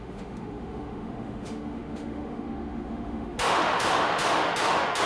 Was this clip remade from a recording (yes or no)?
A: yes